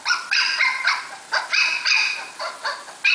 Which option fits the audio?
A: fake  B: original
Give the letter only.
B